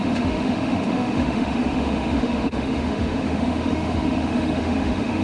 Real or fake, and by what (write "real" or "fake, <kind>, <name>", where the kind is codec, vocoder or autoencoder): fake, autoencoder, DAC-VAE